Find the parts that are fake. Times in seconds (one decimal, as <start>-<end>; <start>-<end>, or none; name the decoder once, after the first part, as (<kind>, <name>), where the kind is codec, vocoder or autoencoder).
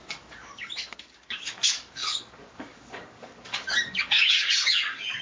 0.0-5.2 (codec, DAC)